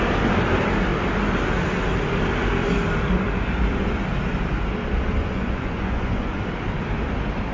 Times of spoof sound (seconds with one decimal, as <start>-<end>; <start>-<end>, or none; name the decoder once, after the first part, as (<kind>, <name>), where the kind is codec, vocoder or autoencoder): 5.2-6.4 (vocoder, Vocos)